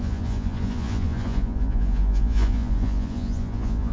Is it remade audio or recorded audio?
remade